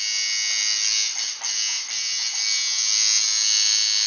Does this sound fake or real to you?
real